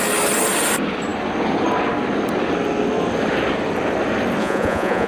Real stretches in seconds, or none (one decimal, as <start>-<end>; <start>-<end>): 0.0-4.4